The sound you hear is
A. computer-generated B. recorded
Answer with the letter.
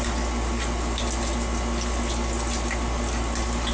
B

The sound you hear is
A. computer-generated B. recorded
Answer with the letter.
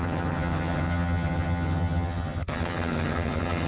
A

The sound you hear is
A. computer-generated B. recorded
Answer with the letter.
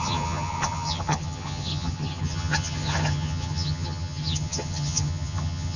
A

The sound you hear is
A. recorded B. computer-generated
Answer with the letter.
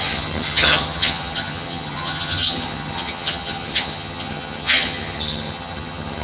B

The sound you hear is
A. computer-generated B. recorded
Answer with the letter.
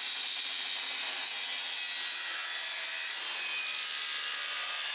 B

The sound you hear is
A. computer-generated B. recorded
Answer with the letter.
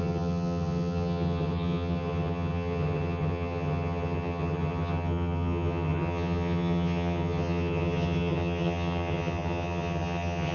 A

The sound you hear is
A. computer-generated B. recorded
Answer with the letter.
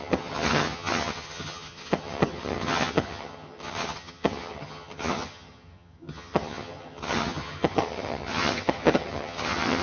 A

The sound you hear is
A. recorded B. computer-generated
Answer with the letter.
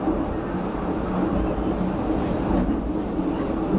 A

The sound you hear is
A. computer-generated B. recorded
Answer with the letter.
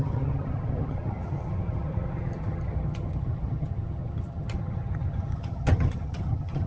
A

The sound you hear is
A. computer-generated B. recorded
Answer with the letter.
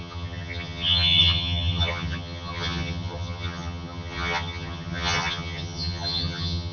A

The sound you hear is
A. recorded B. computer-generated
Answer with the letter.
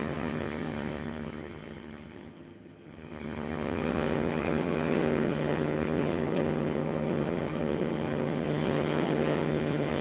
B